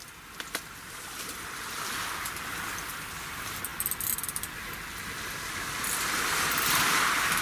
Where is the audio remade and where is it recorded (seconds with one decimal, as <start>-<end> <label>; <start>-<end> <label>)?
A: 0.0-7.4 recorded